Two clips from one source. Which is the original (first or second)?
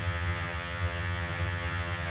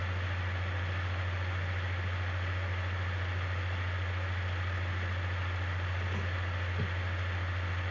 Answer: second